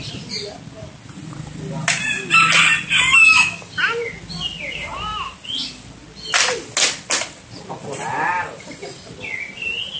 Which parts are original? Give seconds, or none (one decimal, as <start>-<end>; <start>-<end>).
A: 0.0-3.1; 3.6-10.0